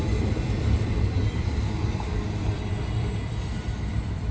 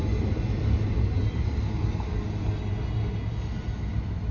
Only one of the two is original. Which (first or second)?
second